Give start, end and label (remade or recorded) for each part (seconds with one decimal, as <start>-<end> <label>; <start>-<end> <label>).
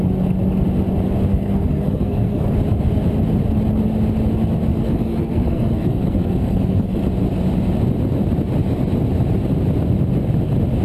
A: 0.0-1.3 recorded; 1.3-2.5 remade; 2.5-4.8 recorded; 4.8-7.0 remade; 7.0-10.8 recorded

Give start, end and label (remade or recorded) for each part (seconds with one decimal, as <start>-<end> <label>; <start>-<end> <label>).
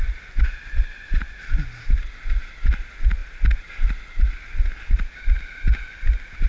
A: 0.0-6.5 recorded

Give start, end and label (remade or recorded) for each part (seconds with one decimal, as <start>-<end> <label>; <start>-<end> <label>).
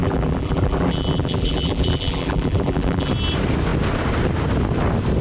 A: 0.0-3.1 remade; 3.1-5.2 recorded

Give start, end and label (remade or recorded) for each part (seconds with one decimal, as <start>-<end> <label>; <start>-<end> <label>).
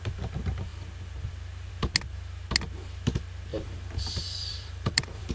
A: 0.0-3.5 recorded; 3.5-5.3 remade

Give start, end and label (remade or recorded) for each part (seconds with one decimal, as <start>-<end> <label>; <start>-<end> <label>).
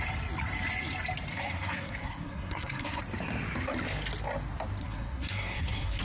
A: 0.0-1.3 recorded; 1.3-3.0 remade; 3.0-4.8 recorded; 4.8-6.0 remade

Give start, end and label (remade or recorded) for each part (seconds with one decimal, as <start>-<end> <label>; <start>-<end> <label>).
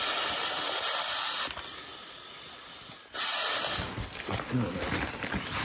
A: 0.0-5.6 recorded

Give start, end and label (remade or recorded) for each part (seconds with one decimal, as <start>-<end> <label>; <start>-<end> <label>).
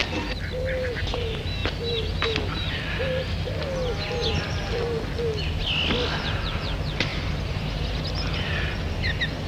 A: 0.0-7.1 recorded; 7.1-7.8 remade; 7.8-9.5 recorded